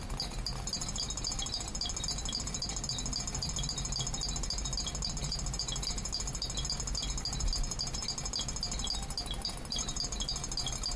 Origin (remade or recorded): recorded